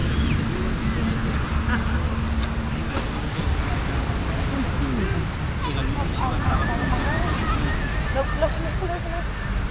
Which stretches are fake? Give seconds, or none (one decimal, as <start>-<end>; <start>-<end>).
none